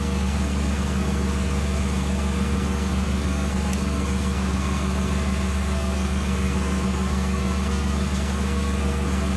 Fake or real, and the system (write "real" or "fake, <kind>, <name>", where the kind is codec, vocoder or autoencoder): fake, codec, SNAC